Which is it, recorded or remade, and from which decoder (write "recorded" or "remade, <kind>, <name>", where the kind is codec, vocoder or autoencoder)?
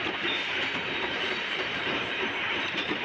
remade, vocoder, BigVGAN v2